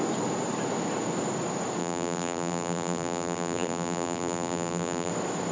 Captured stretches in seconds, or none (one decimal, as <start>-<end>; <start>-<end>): 0.0-1.8; 5.1-5.5